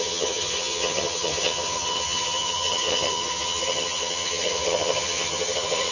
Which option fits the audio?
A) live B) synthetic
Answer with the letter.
B